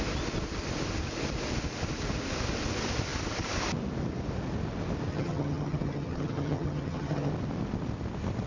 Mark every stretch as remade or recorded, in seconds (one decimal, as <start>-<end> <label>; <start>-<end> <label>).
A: 0.0-5.1 recorded; 5.1-7.3 remade; 7.3-8.5 recorded